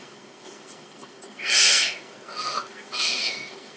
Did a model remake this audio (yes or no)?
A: yes